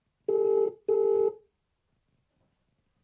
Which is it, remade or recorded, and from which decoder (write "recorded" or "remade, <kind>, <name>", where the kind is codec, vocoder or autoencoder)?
recorded